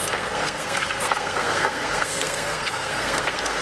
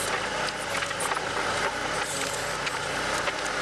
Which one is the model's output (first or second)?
first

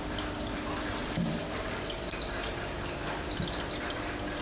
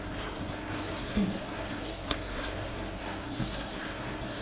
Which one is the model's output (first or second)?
second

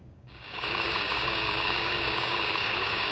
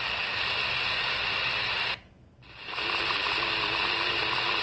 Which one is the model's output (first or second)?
first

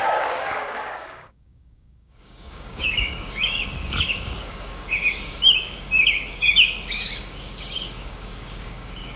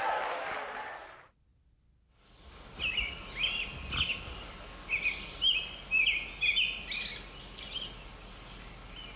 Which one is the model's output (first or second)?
first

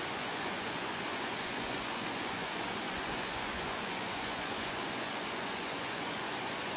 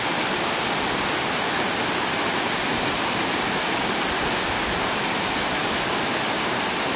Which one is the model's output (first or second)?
first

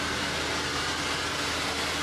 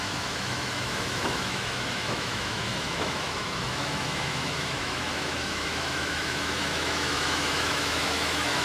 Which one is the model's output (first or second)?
second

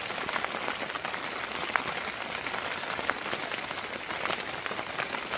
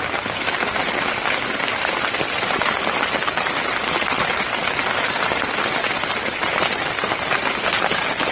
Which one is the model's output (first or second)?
second